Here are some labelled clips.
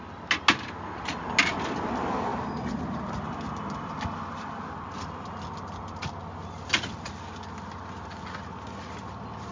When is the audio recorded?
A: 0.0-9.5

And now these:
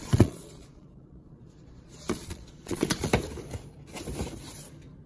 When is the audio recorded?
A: 3.1-5.1